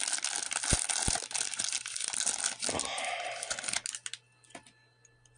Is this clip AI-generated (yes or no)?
no